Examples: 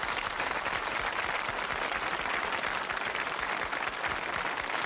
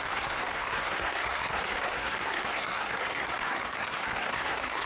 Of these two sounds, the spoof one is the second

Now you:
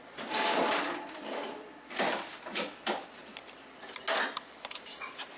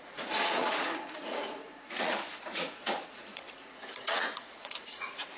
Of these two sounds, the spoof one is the second